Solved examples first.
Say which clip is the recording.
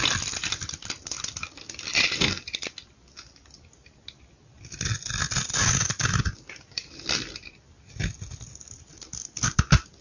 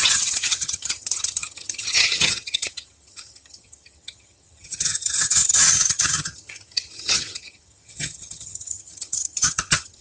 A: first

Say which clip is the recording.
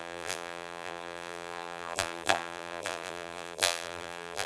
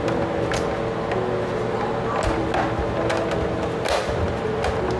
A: second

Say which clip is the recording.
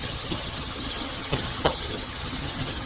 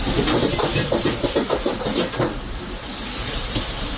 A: second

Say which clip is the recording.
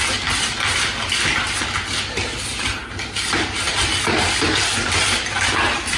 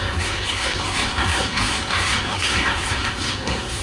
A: first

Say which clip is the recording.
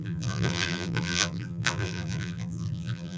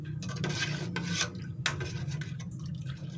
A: second